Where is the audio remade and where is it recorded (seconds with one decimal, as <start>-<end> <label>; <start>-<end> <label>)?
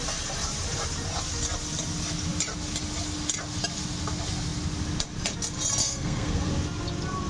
0.0-5.8 recorded; 5.8-6.5 remade; 6.5-7.3 recorded